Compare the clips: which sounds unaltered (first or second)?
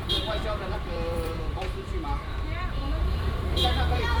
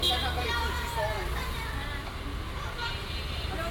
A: second